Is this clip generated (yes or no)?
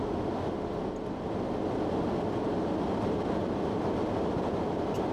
no